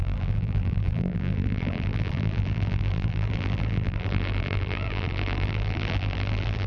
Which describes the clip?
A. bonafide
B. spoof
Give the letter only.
B